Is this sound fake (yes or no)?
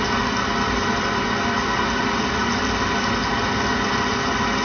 no